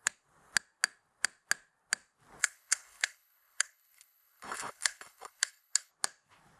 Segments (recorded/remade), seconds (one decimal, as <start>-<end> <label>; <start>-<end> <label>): 0.0-2.4 recorded; 2.4-5.9 remade; 5.9-6.6 recorded